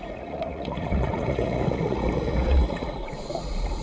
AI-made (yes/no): yes